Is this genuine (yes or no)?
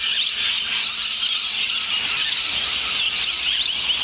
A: yes